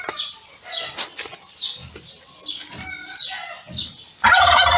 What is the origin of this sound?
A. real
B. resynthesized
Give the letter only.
A